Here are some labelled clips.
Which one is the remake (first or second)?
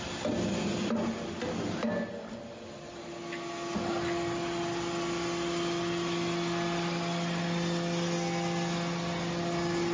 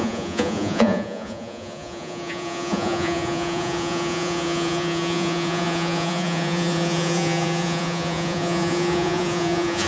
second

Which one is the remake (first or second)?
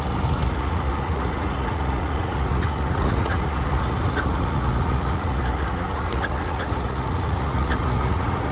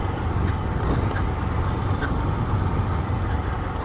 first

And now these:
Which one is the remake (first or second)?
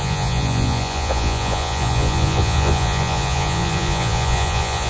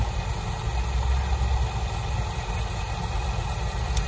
first